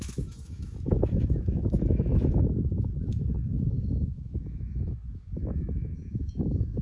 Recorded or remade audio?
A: remade